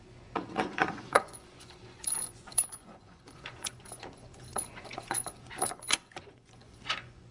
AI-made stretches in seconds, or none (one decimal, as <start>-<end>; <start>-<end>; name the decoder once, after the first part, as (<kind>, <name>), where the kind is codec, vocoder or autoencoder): 0.0-7.3 (vocoder, Vocos)